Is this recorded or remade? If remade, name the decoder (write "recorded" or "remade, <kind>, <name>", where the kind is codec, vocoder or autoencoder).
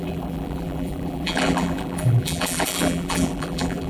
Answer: remade, vocoder, BigVGAN v2